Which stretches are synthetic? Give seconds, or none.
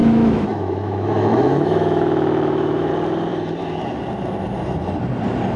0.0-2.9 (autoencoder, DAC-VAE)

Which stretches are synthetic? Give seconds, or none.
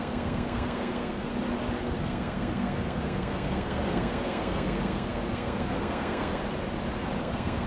0.0-1.3 (codec, SNAC); 1.8-6.4; 7.2-7.7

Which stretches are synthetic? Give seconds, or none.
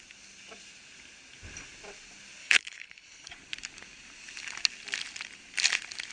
2.4-3.3 (codec, HILCodec)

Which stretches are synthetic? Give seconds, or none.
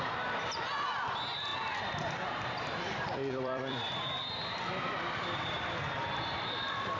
0.0-7.0 (vocoder, BigVGAN v2)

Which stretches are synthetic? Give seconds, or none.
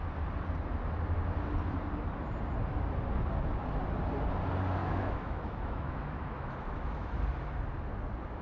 4.8-7.2 (autoencoder, DAC-VAE)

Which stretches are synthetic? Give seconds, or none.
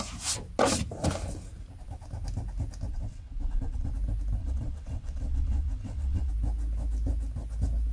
2.9-3.9 (vocoder, WaveNeXt); 4.4-6.3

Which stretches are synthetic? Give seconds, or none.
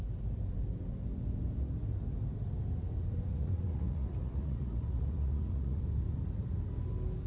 3.3-5.8 (vocoder, Vocos)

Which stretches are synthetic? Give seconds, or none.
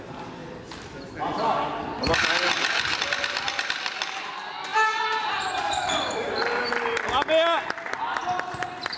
none